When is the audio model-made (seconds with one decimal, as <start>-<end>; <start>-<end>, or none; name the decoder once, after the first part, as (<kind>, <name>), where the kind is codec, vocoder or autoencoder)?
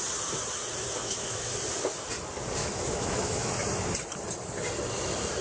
1.0-1.5 (autoencoder, DAC-VAE); 2.6-3.5